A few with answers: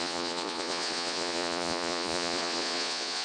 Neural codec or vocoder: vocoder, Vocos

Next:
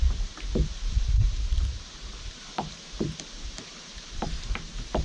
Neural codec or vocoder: vocoder, BigVGAN v2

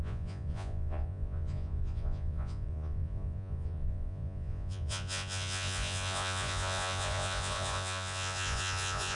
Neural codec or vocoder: vocoder, Vocos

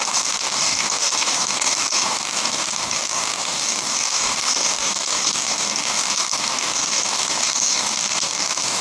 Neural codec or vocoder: codec, DAC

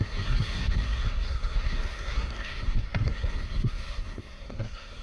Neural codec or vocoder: codec, SNAC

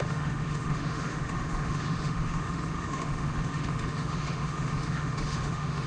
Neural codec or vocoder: autoencoder, DAC-VAE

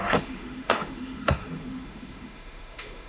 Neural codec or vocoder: autoencoder, DAC-VAE